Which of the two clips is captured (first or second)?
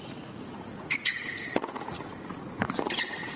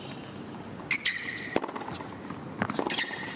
second